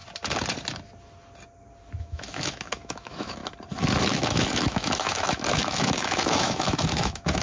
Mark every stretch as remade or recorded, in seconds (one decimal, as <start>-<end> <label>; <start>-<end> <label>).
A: 0.0-2.0 recorded; 2.0-3.4 remade; 3.4-4.1 recorded; 4.1-7.4 remade